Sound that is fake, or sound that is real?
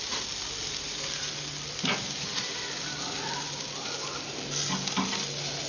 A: real